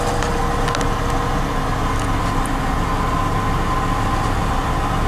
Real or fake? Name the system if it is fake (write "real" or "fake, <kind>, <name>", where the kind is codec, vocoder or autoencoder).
real